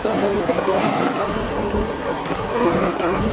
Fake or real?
fake